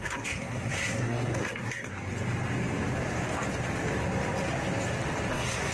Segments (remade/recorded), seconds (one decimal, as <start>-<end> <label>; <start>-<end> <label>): 0.0-1.9 remade; 1.9-5.3 recorded; 5.3-5.7 remade